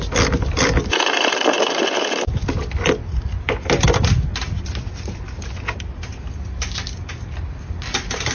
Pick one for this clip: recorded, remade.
recorded